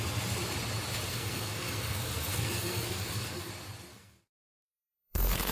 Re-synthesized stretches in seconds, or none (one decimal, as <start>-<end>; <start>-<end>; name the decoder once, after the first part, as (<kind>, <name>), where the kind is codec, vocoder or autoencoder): 1.1-3.5 (codec, SNAC); 3.9-5.5